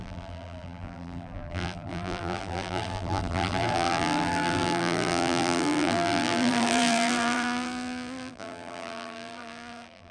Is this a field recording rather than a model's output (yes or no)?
no